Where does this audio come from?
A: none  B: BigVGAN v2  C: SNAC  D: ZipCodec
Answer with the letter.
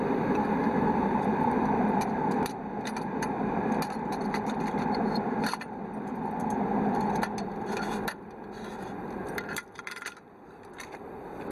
B